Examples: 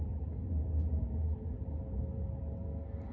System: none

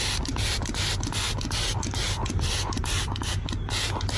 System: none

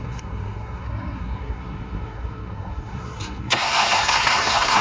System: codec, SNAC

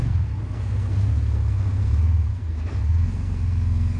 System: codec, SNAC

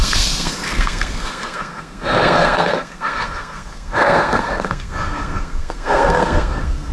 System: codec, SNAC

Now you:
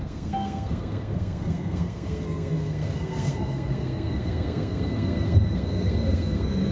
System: codec, SNAC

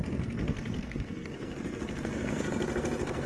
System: codec, SNAC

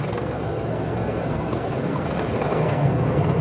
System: codec, SNAC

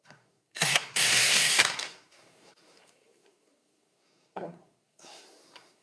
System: codec, SNAC